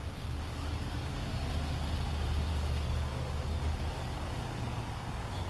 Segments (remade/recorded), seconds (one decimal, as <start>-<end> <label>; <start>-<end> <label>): 0.0-0.5 recorded; 0.5-1.5 remade; 1.5-2.5 recorded; 2.5-5.5 remade

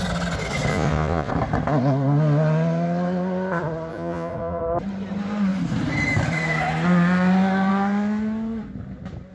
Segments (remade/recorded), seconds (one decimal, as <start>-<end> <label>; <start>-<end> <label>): 0.0-0.7 recorded; 0.7-1.3 remade; 1.3-3.9 recorded; 3.9-4.6 remade; 4.6-9.3 recorded

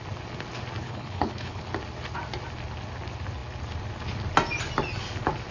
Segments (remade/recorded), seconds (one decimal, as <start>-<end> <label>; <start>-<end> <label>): 0.0-0.8 recorded; 0.8-1.6 remade; 1.6-5.5 recorded

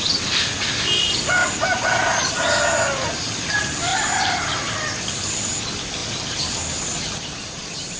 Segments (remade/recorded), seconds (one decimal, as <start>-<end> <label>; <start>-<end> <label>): 0.0-3.9 recorded; 3.9-5.6 remade; 5.6-6.0 recorded; 6.0-8.0 remade

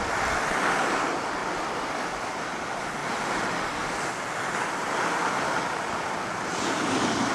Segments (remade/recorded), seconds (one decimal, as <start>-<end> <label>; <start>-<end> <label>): 0.0-7.3 recorded

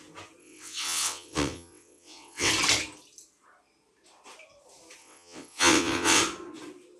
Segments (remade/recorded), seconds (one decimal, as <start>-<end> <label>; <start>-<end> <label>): 0.0-0.4 recorded; 0.4-2.5 remade; 2.5-5.0 recorded; 5.0-6.2 remade; 6.2-7.0 recorded

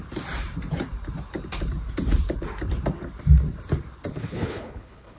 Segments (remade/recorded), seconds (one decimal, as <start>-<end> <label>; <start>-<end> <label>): 0.0-4.1 recorded; 4.1-5.2 remade